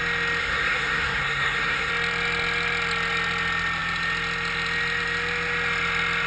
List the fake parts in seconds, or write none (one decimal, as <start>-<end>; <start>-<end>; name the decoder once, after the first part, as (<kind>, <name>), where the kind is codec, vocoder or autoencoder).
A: 0.4-1.9 (codec, SNAC)